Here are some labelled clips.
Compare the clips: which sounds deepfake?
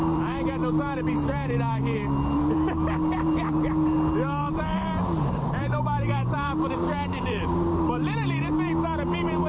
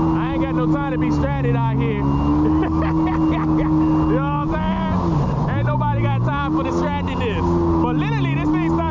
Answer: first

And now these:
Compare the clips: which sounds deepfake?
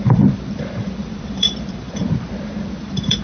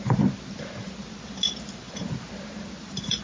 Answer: first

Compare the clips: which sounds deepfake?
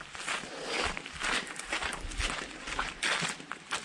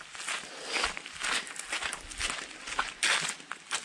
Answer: first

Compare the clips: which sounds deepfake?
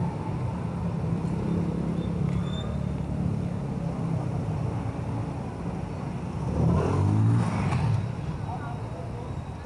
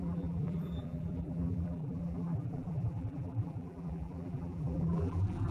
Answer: second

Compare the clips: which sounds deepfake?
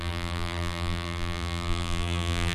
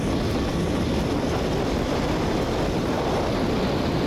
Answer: first